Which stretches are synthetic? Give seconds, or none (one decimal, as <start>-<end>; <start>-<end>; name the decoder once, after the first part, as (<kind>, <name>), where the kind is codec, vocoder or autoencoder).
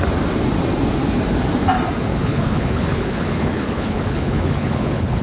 2.1-5.2 (codec, HILCodec)